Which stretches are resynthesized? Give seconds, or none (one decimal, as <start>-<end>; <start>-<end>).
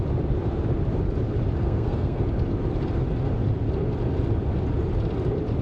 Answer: 1.6-2.2